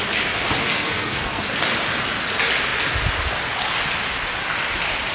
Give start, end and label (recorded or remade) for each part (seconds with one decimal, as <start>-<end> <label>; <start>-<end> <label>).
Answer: 0.0-0.6 recorded; 0.6-1.4 remade; 1.4-5.1 recorded